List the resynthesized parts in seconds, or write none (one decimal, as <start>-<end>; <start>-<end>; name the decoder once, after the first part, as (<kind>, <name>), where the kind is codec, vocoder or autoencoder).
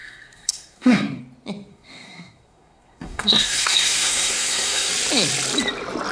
0.0-1.2 (codec, SNAC); 1.7-4.9